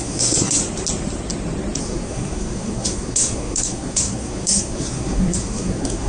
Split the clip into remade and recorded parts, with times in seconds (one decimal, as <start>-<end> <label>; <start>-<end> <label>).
0.0-0.6 remade; 0.6-1.8 recorded; 1.8-6.1 remade